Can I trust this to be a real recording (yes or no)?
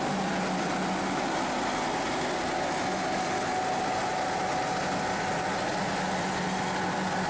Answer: yes